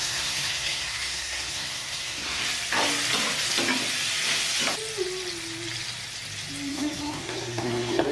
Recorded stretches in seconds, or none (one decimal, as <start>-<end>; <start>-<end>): 2.4-6.7